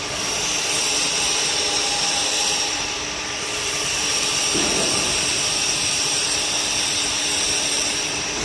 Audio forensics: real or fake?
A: fake